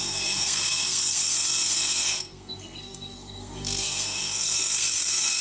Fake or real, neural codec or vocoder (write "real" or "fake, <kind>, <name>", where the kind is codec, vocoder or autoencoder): fake, codec, SNAC